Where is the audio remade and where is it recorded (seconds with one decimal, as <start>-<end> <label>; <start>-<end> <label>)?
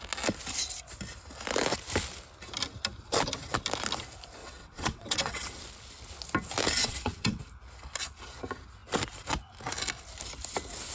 0.0-4.4 recorded; 4.4-5.6 remade; 5.6-6.8 recorded; 6.8-7.4 remade; 7.4-10.9 recorded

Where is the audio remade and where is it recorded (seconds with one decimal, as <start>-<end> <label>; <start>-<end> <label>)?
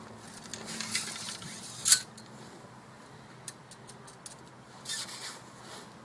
0.0-6.0 recorded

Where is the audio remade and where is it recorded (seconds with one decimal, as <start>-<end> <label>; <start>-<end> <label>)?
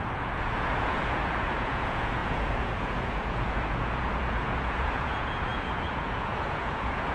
0.0-7.1 remade